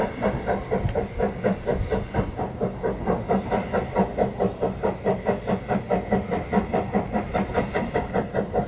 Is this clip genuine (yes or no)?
yes